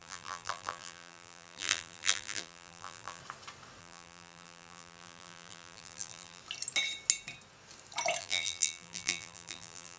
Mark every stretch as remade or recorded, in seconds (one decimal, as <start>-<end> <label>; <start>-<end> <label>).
0.0-3.2 remade; 3.2-3.8 recorded; 3.8-6.4 remade; 6.4-8.2 recorded; 8.2-10.0 remade